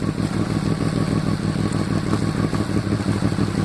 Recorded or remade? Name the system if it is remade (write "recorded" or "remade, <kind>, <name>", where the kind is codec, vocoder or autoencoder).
recorded